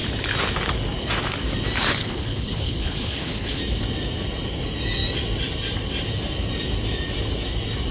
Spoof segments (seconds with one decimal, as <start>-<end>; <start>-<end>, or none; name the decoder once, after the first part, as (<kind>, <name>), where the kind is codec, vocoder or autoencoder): 1.9-3.6 (codec, HILCodec)